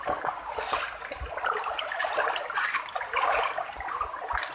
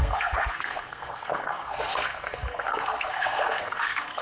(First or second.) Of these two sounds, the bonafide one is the first